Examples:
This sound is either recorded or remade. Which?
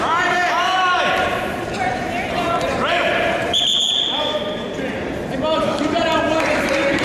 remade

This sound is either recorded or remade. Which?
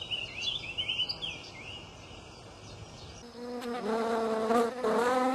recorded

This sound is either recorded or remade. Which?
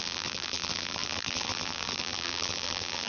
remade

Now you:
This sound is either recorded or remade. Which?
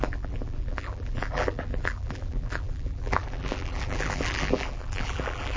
remade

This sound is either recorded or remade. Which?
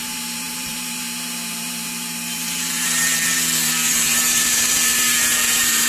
remade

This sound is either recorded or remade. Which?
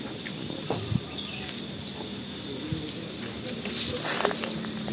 remade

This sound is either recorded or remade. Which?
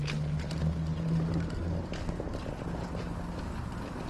recorded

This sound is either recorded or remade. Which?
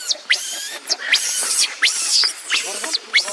remade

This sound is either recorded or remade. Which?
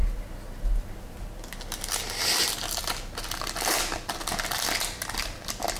recorded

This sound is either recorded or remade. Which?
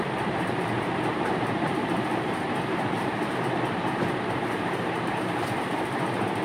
remade